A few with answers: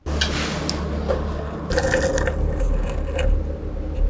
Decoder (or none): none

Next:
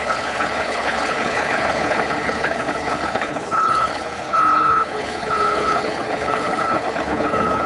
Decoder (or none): codec, HILCodec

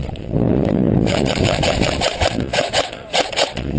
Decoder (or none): vocoder, WaveNeXt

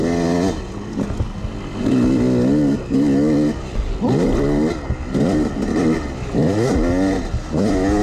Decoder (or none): none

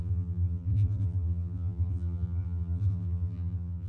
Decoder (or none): vocoder, BigVGAN v2